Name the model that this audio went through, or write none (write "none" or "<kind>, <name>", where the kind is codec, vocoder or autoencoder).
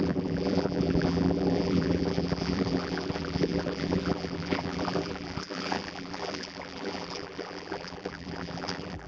vocoder, BigVGAN v2